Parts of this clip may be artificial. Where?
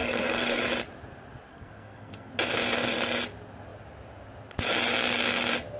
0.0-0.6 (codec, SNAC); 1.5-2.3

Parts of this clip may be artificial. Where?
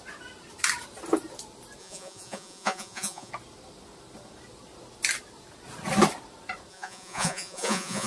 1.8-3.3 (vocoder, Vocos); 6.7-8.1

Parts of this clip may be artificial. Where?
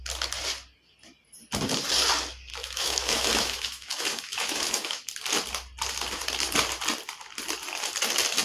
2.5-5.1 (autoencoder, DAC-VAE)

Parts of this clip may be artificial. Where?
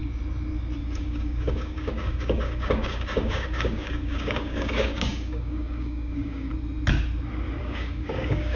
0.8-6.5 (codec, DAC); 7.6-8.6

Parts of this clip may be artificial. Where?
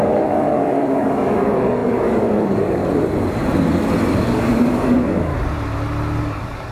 0.0-2.8 (codec, DAC); 4.1-5.3; 6.2-6.7